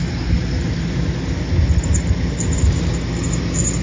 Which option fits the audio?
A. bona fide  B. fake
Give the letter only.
A